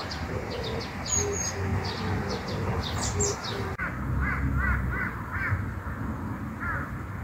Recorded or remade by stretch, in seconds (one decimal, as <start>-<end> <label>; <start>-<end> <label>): 0.0-0.5 remade; 0.5-7.2 recorded